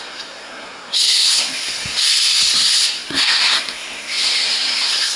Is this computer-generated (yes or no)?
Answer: yes